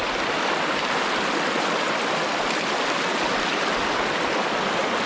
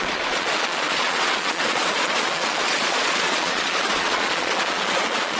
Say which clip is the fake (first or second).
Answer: second